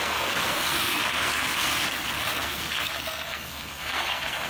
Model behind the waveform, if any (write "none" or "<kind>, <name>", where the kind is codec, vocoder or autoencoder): codec, SNAC